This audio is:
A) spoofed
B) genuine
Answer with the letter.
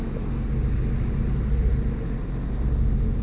B